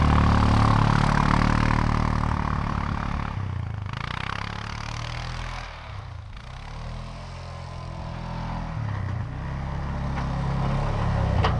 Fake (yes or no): no